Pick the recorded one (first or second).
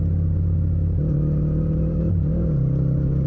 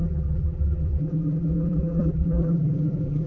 first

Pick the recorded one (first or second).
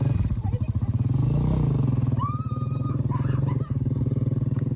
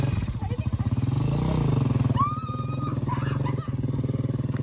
second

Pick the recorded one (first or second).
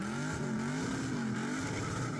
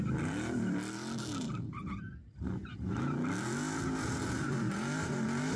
first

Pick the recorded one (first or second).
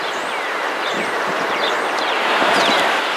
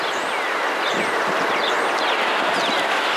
second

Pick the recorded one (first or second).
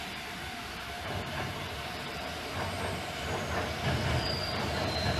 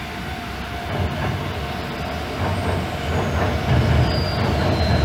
second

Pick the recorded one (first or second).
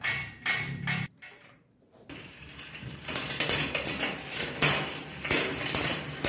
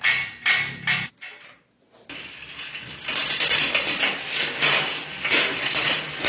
second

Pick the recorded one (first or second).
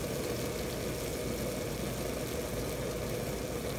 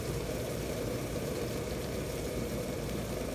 first